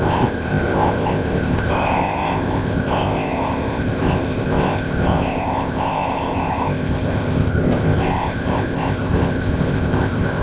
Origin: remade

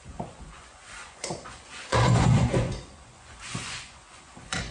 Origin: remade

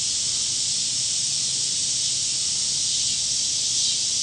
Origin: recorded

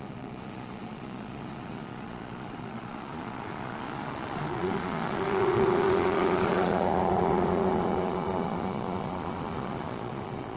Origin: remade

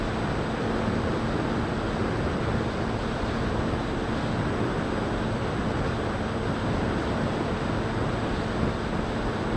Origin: recorded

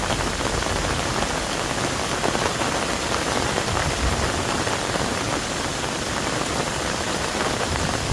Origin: remade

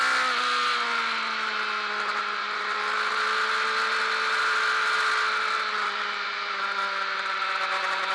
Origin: recorded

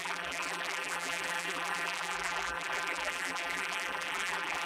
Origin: remade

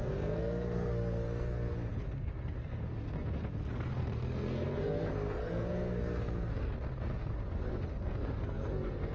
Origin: remade